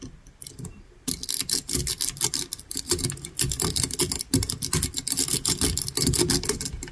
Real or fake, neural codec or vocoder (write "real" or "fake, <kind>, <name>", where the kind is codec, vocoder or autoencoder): real